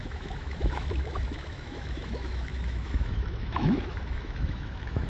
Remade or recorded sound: remade